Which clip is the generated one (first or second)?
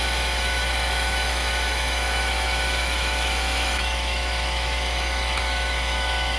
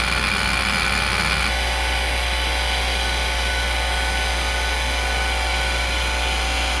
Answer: first